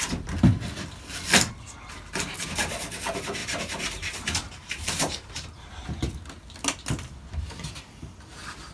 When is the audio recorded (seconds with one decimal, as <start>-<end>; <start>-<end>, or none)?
0.0-3.4; 5.9-8.7